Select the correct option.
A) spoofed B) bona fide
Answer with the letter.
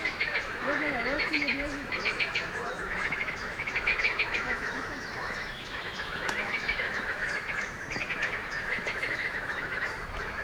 A